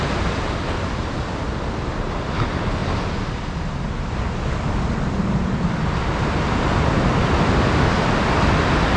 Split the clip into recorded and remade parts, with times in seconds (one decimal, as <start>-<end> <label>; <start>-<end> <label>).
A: 0.0-9.0 recorded